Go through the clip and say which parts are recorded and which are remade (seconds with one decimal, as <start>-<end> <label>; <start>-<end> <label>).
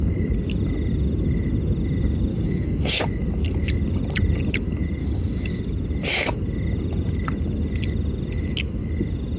0.0-2.3 recorded; 2.3-3.0 remade; 3.0-5.0 recorded; 5.0-5.6 remade; 5.6-9.4 recorded